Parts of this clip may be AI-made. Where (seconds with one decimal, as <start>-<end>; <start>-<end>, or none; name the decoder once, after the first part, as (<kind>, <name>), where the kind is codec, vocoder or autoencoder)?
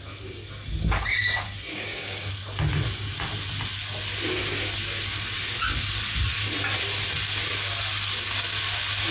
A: 1.7-2.3 (codec, DAC)